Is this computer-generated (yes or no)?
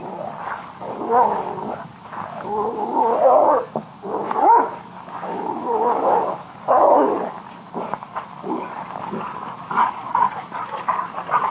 yes